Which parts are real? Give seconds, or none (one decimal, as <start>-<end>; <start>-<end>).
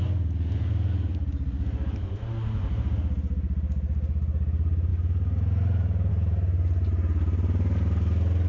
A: 0.0-8.5